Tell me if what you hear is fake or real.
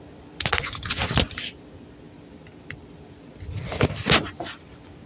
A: real